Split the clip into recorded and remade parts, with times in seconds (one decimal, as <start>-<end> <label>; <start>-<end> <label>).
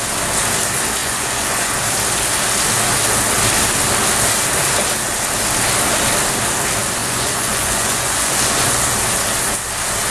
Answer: 0.0-1.0 recorded; 1.0-1.7 remade; 1.7-7.0 recorded; 7.0-8.8 remade; 8.8-10.1 recorded